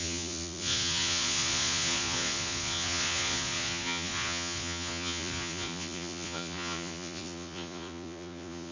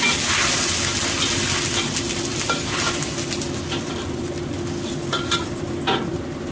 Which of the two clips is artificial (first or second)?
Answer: first